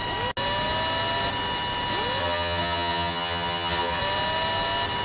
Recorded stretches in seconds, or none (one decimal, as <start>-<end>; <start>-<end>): 0.0-2.2; 4.0-5.0